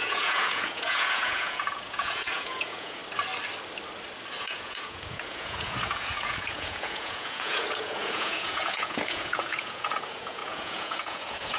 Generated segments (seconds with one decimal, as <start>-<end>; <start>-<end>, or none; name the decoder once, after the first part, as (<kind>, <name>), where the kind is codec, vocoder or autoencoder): 0.0-3.0 (vocoder, Vocos); 4.4-11.6